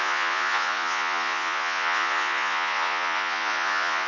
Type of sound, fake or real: fake